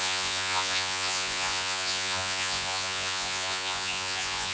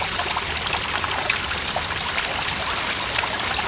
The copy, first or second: first